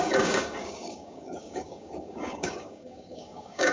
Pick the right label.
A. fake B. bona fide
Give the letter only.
A